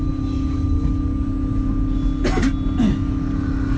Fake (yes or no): no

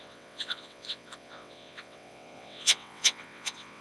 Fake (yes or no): yes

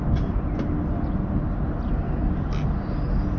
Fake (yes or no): no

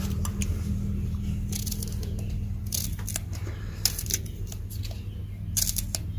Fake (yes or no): no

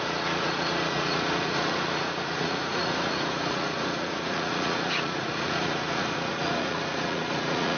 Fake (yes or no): yes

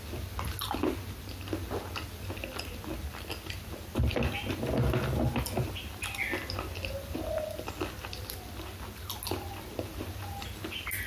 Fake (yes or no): no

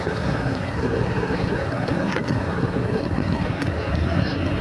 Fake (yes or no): yes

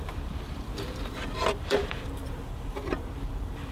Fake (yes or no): yes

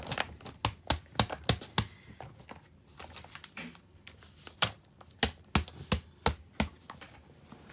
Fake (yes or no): no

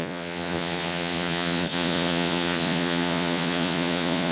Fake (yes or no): yes